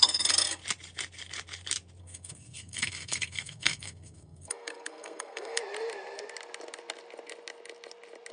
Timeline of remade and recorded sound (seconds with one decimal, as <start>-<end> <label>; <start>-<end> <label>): 0.0-0.6 remade; 0.6-2.0 recorded; 2.0-5.6 remade; 5.6-8.3 recorded